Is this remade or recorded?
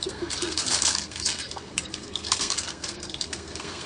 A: remade